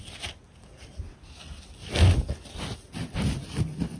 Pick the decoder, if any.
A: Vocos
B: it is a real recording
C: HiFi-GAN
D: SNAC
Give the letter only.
B